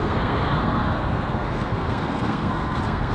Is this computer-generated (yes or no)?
yes